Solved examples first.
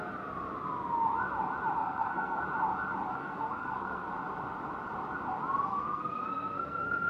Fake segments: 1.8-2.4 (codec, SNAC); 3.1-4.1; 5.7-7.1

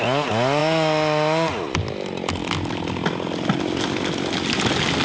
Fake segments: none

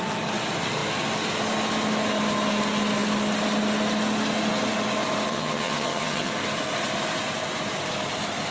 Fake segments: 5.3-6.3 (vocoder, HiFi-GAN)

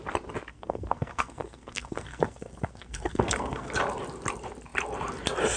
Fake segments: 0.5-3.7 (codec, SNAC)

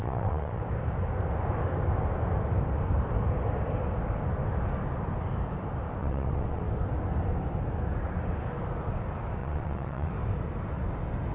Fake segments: 0.0-0.6 (vocoder, WaveNeXt); 6.0-6.6; 9.4-10.1

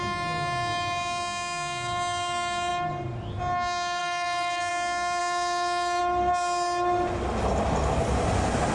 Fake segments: 4.0-4.7 (autoencoder, DAC-VAE); 5.2-6.0